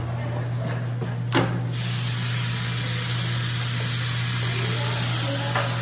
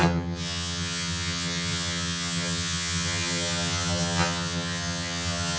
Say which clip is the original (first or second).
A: first